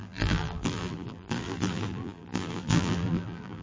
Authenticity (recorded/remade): remade